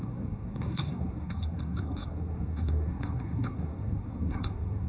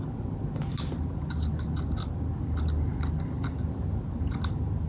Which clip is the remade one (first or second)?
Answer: first